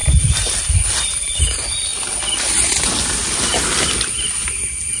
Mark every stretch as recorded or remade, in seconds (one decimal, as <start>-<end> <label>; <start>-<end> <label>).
0.0-5.0 remade